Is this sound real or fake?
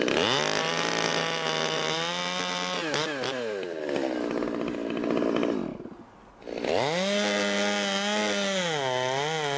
real